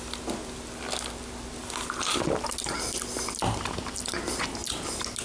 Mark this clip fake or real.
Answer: real